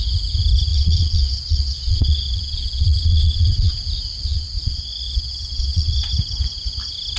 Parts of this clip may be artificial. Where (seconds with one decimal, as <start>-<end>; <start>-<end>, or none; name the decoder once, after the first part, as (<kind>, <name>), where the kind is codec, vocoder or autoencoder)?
0.7-3.7 (vocoder, Vocos); 4.3-6.1

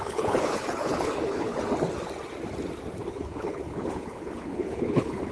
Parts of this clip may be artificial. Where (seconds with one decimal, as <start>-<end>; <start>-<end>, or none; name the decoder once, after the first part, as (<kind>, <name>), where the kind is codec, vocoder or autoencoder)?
0.0-1.5 (codec, HILCodec); 3.1-5.3

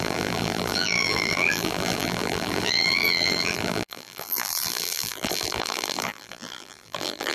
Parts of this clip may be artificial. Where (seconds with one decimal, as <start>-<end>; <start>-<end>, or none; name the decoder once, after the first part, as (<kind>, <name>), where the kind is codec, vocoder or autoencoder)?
0.0-7.3 (vocoder, BigVGAN v2)